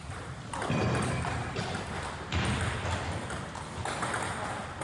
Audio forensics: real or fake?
real